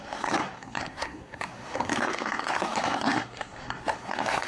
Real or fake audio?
fake